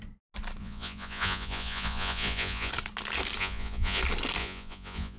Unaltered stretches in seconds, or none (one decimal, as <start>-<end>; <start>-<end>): 0.0-0.6; 2.7-3.4; 4.0-4.4

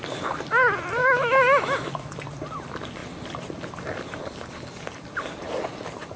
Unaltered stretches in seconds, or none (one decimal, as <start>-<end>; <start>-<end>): 0.0-1.0; 1.9-6.2

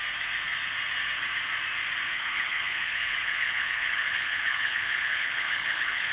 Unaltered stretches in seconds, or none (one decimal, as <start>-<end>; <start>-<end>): 0.0-2.1

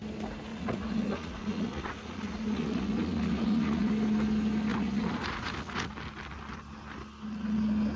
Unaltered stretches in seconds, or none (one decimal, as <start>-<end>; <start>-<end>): 0.0-0.5; 3.9-4.7; 5.9-8.0

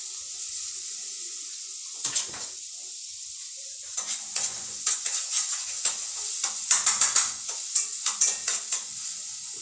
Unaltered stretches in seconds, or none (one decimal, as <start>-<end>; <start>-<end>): none

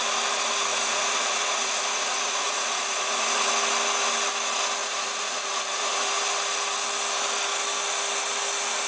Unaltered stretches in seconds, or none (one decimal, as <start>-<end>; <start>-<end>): 0.0-0.7; 3.5-4.8; 6.1-8.9